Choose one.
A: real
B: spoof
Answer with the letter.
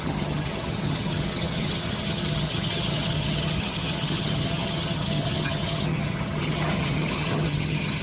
B